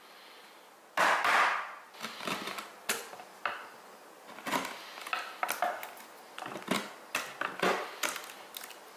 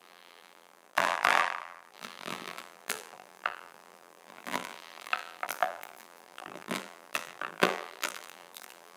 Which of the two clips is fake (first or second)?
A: second